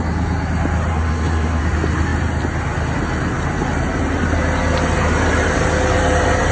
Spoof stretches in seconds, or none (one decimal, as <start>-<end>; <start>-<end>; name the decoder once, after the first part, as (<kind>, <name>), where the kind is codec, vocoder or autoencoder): 0.9-1.6 (codec, SNAC)